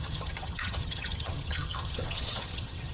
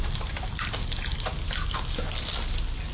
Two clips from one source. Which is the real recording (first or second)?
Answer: second